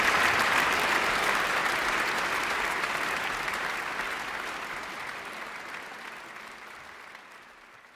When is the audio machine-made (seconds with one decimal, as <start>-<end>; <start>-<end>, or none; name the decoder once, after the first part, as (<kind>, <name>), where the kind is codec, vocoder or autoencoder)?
0.0-1.6 (vocoder, BigVGAN v2); 6.4-8.0